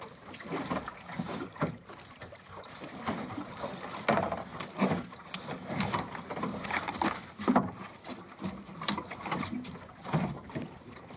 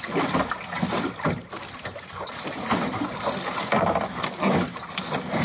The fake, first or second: first